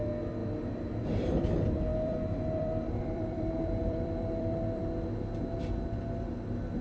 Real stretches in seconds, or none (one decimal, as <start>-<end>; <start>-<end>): 0.0-0.4; 1.0-1.9; 4.8-6.8